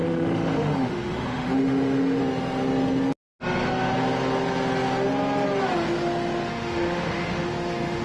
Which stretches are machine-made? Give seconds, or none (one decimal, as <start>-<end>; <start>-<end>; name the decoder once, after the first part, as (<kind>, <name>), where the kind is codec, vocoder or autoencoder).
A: 0.0-2.2 (autoencoder, DAC-VAE); 6.5-8.0